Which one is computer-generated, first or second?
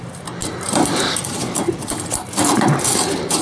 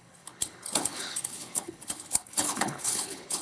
second